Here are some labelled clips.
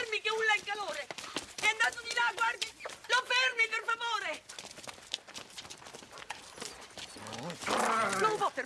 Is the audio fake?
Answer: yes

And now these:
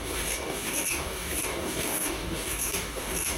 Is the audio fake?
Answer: yes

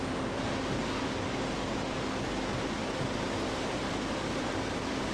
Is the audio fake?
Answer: no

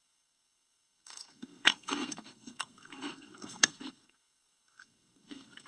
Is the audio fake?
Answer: yes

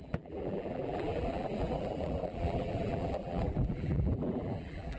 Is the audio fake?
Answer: yes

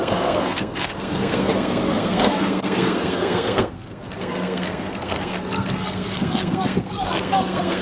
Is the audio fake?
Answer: yes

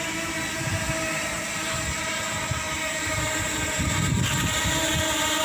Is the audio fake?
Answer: yes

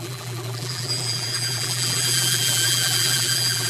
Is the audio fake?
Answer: yes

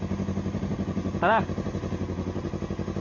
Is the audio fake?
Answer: no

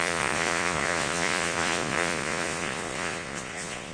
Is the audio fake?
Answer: yes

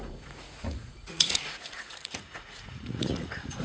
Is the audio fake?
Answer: yes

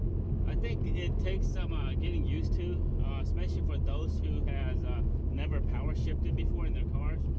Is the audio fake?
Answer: no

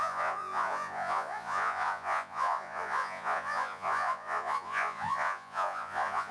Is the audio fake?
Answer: yes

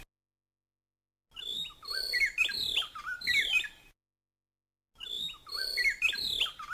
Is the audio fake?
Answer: no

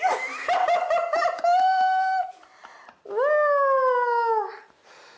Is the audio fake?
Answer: no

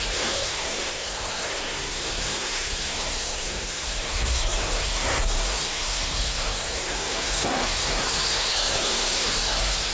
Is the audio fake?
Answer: yes